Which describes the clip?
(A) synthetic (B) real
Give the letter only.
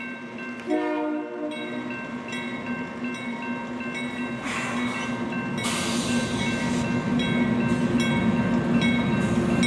B